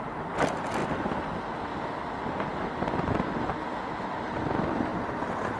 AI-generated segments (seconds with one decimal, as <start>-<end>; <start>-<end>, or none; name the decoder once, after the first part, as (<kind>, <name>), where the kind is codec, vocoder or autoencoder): none

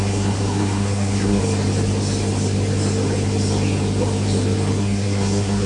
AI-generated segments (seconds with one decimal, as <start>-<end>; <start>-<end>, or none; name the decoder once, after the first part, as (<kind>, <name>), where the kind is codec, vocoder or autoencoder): 0.0-1.4 (codec, SNAC); 4.8-5.7

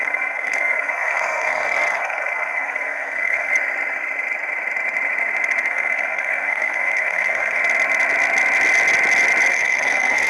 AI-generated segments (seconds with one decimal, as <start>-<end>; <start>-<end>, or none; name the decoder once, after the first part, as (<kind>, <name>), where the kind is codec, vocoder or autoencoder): 0.0-3.5 (codec, SNAC); 5.7-7.6; 9.5-10.3

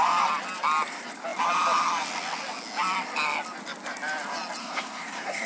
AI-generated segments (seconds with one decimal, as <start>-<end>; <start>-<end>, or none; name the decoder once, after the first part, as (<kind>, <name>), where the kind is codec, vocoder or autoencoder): 4.6-5.5 (codec, SNAC)

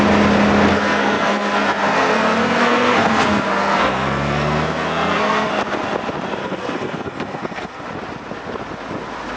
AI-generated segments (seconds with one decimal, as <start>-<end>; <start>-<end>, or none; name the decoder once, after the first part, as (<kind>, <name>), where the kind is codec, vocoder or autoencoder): 0.7-5.5 (codec, SNAC); 6.4-7.8

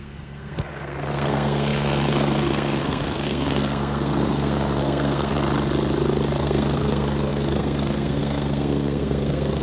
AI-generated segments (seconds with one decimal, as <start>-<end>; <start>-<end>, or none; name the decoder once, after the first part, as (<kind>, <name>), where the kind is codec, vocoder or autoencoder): 0.0-5.3 (codec, SNAC); 6.4-9.6

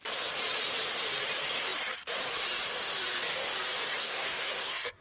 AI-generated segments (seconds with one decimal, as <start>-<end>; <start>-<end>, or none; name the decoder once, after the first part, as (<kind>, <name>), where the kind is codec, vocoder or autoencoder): 4.0-5.0 (codec, SNAC)

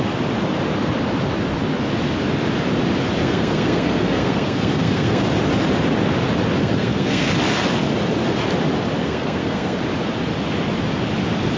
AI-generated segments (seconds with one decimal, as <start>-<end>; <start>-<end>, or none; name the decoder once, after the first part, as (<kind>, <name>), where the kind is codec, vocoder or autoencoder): 3.2-5.2 (codec, SNAC); 6.6-7.3; 9.0-9.8